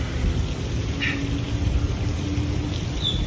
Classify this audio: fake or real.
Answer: real